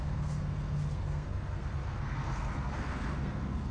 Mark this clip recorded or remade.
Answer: remade